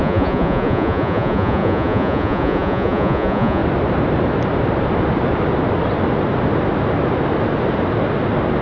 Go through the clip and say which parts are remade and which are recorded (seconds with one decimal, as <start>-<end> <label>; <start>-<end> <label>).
0.0-3.6 remade; 3.6-8.6 recorded